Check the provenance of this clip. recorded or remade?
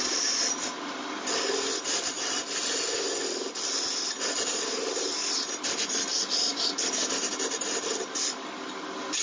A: recorded